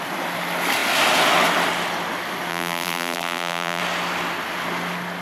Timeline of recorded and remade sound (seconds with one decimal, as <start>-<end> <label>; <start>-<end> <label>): 0.0-2.5 recorded; 2.5-3.8 remade; 3.8-5.2 recorded